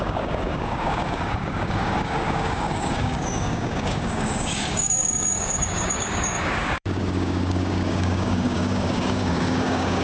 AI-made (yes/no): yes